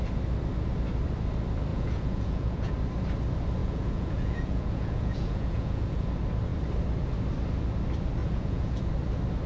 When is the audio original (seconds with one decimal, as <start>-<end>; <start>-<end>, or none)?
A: 0.0-1.7; 2.7-3.6; 6.1-8.2; 8.9-9.5